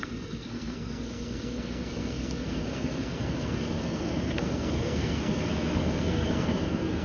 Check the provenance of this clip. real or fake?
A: fake